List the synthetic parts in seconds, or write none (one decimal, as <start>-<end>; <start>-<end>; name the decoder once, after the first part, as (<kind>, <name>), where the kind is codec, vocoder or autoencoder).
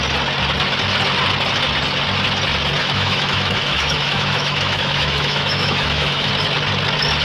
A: 2.8-6.3 (autoencoder, DAC-VAE)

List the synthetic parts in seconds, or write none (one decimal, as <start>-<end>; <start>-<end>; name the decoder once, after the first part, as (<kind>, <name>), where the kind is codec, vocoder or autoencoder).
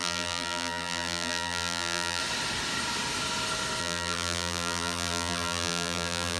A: 0.0-2.2 (vocoder, BigVGAN v2); 3.8-6.4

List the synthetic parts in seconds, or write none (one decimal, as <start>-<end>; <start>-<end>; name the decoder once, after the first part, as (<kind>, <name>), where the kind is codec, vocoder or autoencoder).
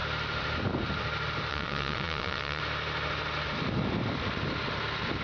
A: 1.5-2.6 (vocoder, WaveNeXt)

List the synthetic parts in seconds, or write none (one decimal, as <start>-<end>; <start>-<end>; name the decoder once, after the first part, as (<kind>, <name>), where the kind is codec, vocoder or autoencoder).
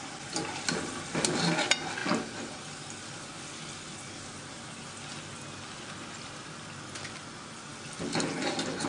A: none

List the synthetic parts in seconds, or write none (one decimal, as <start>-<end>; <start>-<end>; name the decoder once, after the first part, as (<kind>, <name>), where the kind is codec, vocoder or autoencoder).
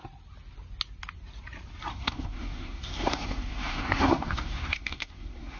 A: 1.9-5.6 (codec, SNAC)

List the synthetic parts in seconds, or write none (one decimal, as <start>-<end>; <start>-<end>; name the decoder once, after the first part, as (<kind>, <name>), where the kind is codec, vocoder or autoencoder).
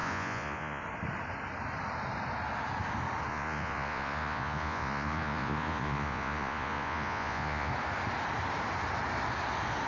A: 0.0-0.8 (vocoder, Vocos); 3.3-7.7